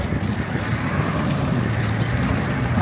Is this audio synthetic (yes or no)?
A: no